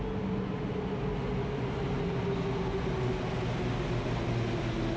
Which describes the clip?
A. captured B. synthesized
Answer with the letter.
A